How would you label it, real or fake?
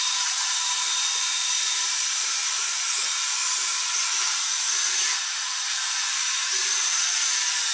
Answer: fake